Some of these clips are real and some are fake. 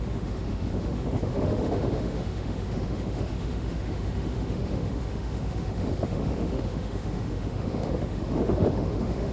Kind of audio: fake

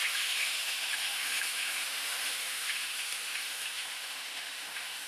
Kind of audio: fake